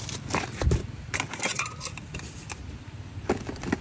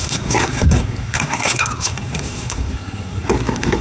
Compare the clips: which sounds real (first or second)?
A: first